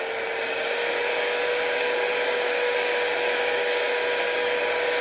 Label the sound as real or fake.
fake